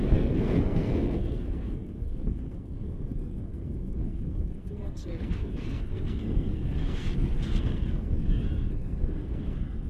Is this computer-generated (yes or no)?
yes